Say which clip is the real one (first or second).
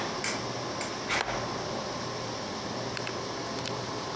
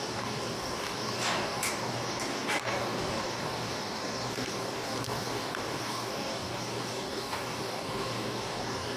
first